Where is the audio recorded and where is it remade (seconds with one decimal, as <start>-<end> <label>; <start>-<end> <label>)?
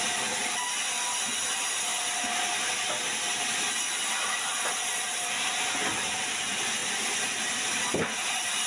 0.0-1.9 recorded; 1.9-2.9 remade; 2.9-8.7 recorded